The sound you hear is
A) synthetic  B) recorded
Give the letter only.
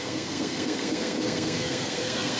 A